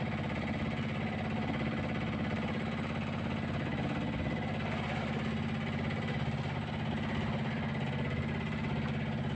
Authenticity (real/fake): real